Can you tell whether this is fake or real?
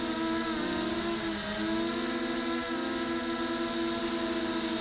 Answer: real